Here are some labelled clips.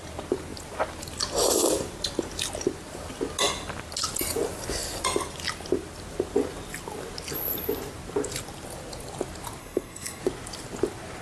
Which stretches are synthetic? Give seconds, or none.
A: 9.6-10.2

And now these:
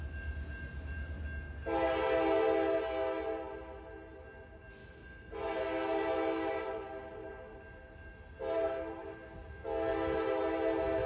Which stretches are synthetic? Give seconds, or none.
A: 4.8-5.6

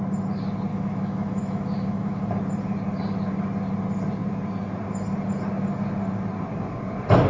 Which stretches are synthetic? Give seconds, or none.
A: 0.7-2.3